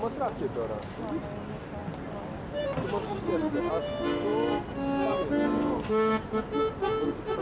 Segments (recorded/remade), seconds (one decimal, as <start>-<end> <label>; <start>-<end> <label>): 0.0-7.4 recorded